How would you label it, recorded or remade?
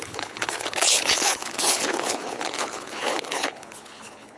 remade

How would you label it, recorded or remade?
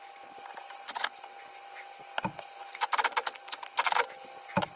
recorded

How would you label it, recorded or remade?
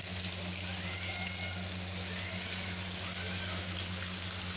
recorded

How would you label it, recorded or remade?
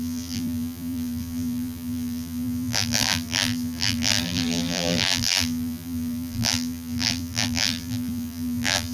remade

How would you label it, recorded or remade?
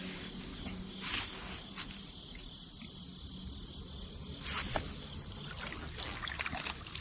recorded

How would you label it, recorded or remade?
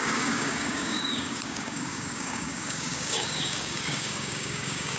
remade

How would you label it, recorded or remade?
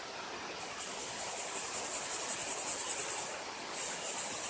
recorded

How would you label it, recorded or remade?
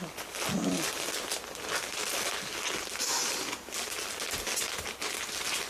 recorded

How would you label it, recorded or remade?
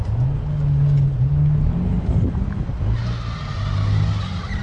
recorded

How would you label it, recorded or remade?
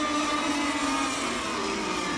recorded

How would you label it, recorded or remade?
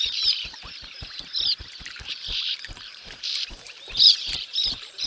remade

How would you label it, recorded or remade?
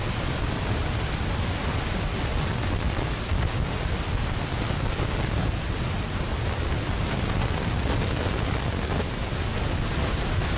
recorded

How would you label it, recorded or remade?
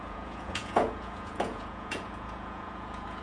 remade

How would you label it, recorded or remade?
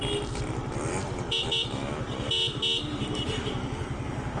recorded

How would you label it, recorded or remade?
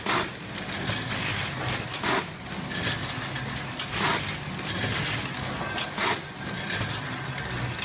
recorded